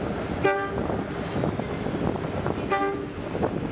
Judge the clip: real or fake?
real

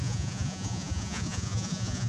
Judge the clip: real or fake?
fake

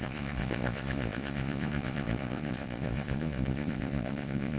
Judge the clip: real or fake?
fake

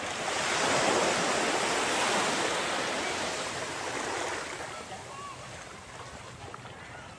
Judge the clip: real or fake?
real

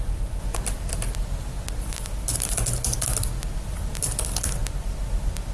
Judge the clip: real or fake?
real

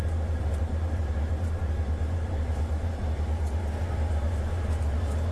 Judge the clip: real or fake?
real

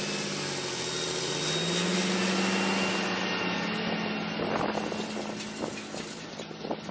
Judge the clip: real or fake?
real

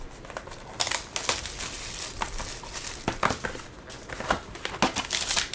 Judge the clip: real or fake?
real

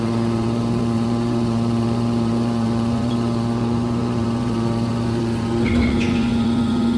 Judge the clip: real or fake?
fake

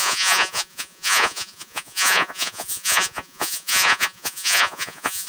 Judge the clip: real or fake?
fake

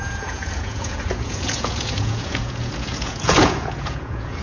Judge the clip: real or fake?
fake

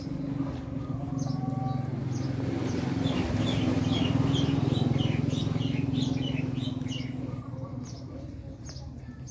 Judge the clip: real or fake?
real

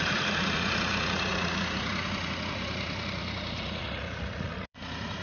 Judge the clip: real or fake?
fake